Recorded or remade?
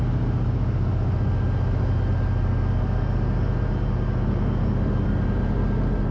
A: recorded